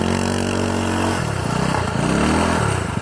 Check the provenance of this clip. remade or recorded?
recorded